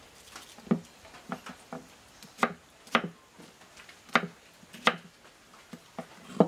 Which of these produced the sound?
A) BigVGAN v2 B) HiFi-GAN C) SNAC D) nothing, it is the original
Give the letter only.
D